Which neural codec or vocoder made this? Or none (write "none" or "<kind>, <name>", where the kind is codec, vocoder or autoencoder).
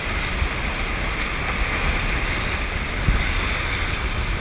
none